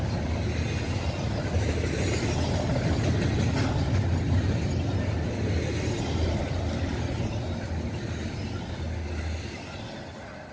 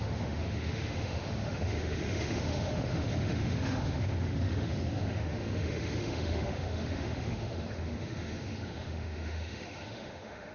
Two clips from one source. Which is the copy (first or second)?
second